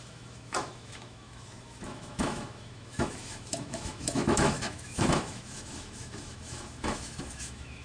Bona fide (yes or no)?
no